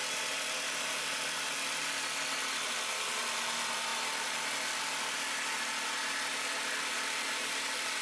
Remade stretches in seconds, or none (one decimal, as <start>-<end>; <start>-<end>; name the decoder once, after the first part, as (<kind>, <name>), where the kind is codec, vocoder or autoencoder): none